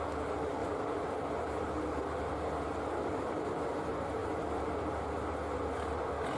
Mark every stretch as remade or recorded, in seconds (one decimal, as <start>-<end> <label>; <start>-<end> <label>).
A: 0.0-0.6 recorded; 0.6-2.4 remade; 2.4-4.2 recorded; 4.2-5.3 remade; 5.3-6.4 recorded